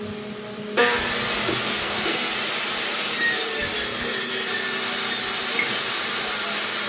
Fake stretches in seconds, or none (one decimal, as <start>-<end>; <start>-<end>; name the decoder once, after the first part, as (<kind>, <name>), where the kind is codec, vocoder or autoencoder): 1.8-2.3 (codec, SNAC)